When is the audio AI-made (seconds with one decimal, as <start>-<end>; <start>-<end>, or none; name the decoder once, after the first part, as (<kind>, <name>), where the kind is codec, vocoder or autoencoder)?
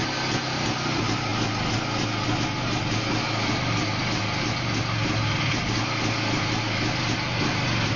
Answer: none